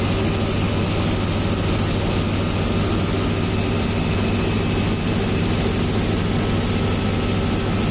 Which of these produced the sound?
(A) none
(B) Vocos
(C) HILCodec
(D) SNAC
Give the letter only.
A